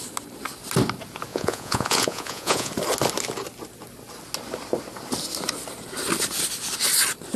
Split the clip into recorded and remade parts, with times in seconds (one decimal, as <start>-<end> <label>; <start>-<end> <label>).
0.0-1.3 recorded; 1.3-2.7 remade; 2.7-7.4 recorded